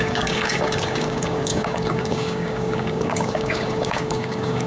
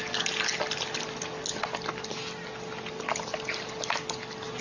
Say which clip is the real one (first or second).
second